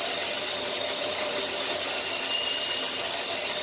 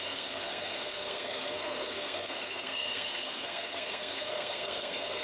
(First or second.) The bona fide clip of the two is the first